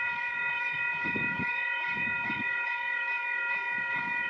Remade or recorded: remade